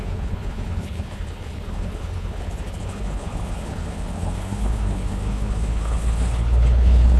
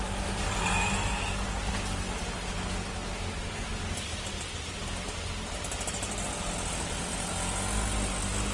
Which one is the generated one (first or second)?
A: first